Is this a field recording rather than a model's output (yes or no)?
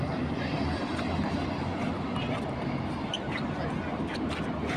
yes